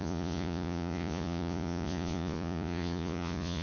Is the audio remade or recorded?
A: remade